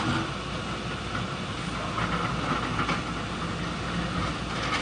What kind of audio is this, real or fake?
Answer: real